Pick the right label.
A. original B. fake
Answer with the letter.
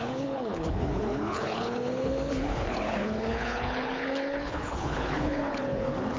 B